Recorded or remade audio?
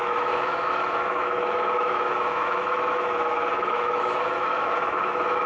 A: remade